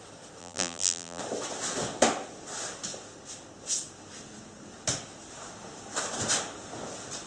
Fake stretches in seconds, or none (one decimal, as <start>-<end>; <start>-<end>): 0.4-1.2

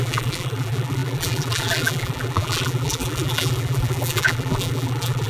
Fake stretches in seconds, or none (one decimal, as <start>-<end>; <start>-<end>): 0.0-5.3